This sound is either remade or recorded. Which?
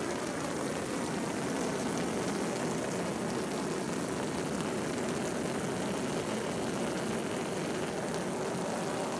recorded